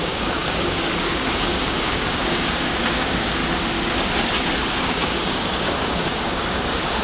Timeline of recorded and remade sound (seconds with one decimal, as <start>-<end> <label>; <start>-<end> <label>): 0.0-3.4 remade; 3.4-4.8 recorded; 4.8-7.0 remade